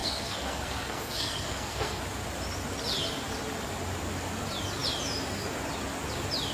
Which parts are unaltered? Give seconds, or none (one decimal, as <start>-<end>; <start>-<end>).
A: 2.0-6.5